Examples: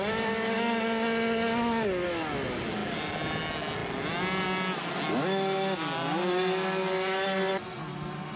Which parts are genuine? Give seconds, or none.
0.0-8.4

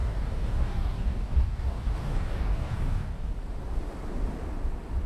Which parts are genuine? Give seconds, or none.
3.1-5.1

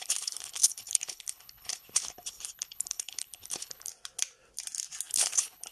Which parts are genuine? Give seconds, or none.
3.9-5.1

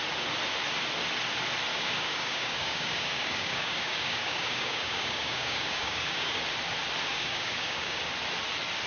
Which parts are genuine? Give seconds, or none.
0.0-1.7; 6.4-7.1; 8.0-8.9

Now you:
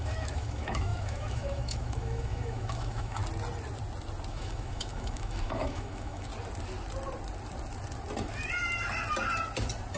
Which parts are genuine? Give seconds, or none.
3.2-4.3; 6.3-10.0